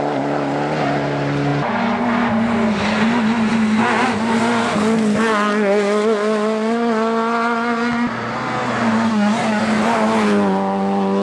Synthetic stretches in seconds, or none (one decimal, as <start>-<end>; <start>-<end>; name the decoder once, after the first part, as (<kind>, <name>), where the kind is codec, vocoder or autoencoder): 9.1-9.6 (codec, SNAC)

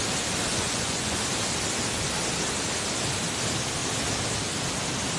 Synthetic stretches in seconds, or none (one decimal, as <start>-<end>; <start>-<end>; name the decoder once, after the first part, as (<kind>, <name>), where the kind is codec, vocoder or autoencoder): 0.5-1.2 (vocoder, Vocos)

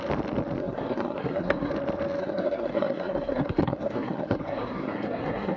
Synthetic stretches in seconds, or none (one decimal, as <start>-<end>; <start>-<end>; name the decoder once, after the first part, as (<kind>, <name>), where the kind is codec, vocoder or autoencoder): 0.6-1.7 (codec, SNAC); 2.2-5.6

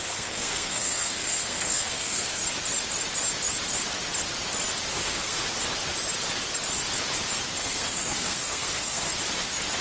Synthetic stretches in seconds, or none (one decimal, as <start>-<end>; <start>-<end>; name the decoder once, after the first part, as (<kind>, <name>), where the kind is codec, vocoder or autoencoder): 0.0-2.4 (codec, SNAC); 4.9-5.4; 7.6-9.1

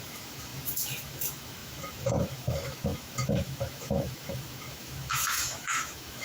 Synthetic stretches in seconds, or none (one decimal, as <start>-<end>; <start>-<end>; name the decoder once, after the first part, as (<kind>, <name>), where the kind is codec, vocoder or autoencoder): 0.0-6.2 (autoencoder, DAC-VAE)